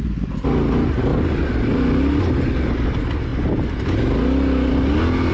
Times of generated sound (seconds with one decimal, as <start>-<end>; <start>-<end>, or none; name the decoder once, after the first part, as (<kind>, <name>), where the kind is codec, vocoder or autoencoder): none